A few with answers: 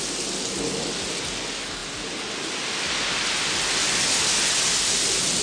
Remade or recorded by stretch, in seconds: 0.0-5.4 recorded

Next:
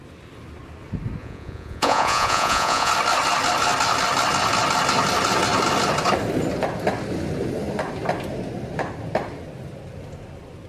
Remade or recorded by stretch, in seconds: 0.0-1.2 recorded; 1.2-2.9 remade; 2.9-10.7 recorded

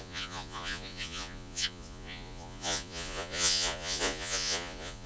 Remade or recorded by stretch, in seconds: 0.0-5.1 remade

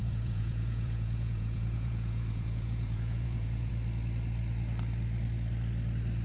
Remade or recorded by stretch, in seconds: 0.0-3.7 remade; 3.7-6.2 recorded

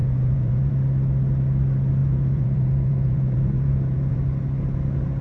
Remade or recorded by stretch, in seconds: 0.0-0.7 remade; 0.7-2.0 recorded; 2.0-4.2 remade; 4.2-5.2 recorded

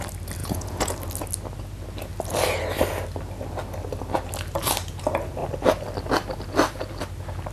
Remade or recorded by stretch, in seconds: 0.0-0.4 recorded; 0.4-0.9 remade; 0.9-7.5 recorded

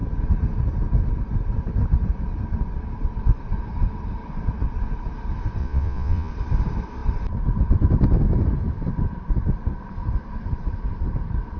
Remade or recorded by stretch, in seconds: 0.0-5.6 recorded; 5.6-6.3 remade; 6.3-11.6 recorded